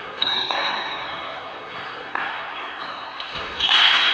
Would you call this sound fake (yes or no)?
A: yes